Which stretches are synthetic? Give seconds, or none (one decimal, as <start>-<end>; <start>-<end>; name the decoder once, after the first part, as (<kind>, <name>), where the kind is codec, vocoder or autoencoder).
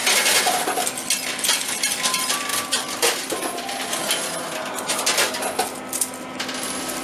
0.0-0.7 (vocoder, BigVGAN v2); 2.5-4.0